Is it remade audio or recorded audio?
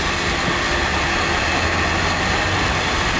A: recorded